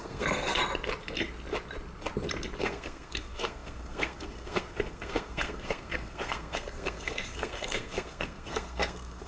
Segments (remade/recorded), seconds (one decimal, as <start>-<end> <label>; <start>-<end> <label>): 0.0-0.6 remade; 0.6-2.6 recorded; 2.6-9.3 remade